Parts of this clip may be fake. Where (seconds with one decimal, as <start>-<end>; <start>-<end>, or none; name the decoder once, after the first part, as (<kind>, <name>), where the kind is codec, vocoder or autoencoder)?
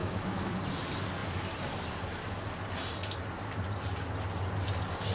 0.0-0.5 (autoencoder, DAC-VAE)